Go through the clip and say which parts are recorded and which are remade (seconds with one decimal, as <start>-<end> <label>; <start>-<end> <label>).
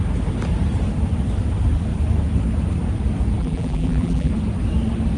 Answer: 0.0-3.4 recorded; 3.4-4.3 remade; 4.3-5.2 recorded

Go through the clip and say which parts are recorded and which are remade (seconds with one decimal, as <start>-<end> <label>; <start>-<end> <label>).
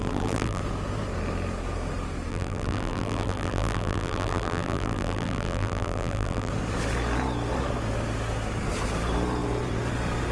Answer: 0.0-0.6 remade; 0.6-2.3 recorded; 2.3-6.5 remade; 6.5-10.3 recorded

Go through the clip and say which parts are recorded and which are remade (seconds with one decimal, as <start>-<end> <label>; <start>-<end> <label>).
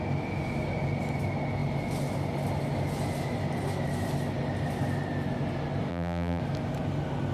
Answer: 0.0-5.9 recorded; 5.9-6.4 remade; 6.4-7.3 recorded